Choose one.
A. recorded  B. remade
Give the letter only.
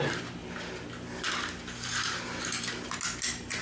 A